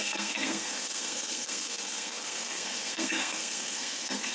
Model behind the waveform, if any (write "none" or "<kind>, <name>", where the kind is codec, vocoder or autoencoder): codec, SNAC